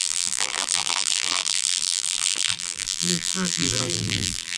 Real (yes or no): no